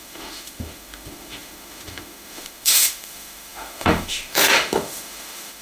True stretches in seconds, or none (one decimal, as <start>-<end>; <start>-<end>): none

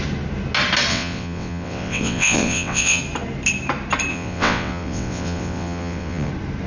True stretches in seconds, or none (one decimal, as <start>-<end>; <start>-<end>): 0.0-0.9; 3.0-4.1; 6.3-6.7

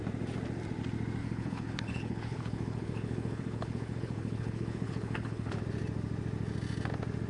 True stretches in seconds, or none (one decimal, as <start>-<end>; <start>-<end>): 0.0-1.2; 5.6-7.3

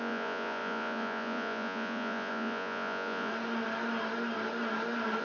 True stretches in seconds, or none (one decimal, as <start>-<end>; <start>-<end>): 3.3-5.2

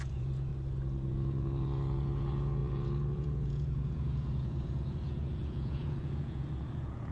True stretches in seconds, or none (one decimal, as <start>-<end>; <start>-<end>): 0.5-1.1

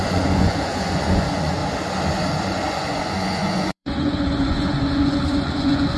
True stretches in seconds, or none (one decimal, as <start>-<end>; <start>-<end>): 1.6-2.4